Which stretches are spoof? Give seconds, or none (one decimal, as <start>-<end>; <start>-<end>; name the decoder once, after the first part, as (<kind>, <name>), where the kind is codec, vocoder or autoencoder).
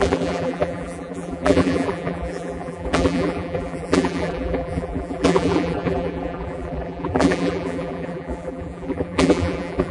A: 0.0-9.9 (vocoder, BigVGAN v2)